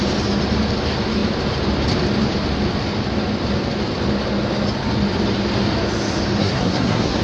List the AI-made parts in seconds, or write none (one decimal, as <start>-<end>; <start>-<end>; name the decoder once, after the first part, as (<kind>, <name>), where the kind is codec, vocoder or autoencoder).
6.4-7.2 (codec, SNAC)